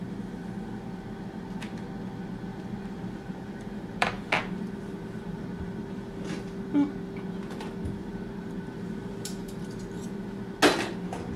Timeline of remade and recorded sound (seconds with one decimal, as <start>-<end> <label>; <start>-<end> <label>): 0.0-2.5 recorded; 2.5-5.6 remade; 5.6-8.1 recorded; 8.1-10.2 remade; 10.2-11.4 recorded